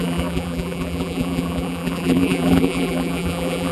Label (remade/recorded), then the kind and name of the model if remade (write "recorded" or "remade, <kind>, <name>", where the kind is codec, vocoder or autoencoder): remade, vocoder, BigVGAN v2